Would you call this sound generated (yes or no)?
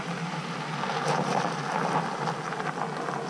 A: no